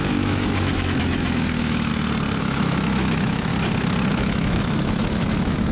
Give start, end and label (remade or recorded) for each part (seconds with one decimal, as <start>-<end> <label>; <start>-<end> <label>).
0.0-1.9 remade; 1.9-2.4 recorded; 2.4-3.5 remade; 3.5-4.1 recorded; 4.1-5.7 remade